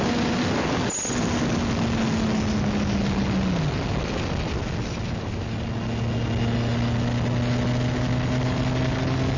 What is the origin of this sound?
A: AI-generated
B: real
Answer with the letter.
B